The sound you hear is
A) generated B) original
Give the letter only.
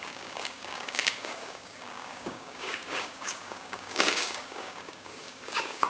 A